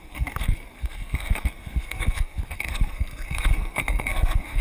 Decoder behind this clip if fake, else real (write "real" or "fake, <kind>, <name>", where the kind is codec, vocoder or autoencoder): fake, codec, SNAC